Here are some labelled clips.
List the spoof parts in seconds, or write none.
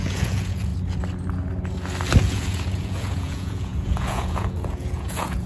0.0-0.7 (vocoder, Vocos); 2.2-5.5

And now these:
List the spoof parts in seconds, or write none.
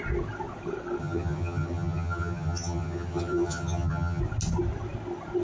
1.0-4.2 (vocoder, HiFi-GAN)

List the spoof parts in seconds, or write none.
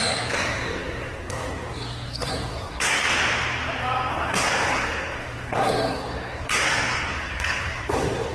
0.0-3.0 (codec, SNAC); 4.1-8.3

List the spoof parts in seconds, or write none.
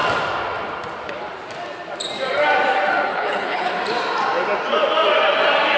3.1-3.8 (codec, HILCodec)